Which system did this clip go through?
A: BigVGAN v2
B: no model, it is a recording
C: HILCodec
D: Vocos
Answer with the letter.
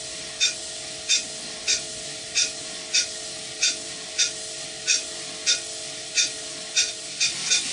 B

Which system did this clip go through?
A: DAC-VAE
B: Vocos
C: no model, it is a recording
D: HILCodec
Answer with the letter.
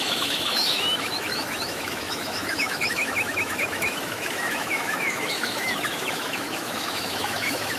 A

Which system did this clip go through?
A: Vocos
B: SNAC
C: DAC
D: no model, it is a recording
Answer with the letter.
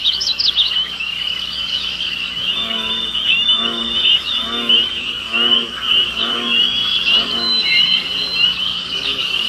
C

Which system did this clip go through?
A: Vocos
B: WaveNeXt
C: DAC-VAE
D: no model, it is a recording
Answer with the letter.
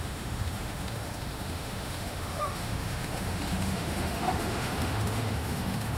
C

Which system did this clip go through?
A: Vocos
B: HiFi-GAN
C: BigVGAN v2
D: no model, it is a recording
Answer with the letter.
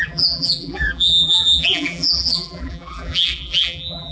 C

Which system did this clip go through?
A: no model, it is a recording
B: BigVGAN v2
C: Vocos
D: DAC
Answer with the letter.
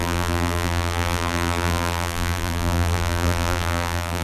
B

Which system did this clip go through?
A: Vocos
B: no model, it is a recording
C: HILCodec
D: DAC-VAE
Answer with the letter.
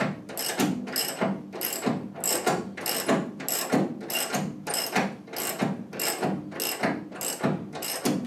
B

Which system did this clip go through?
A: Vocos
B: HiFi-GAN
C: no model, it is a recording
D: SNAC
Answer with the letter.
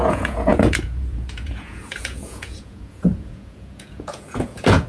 A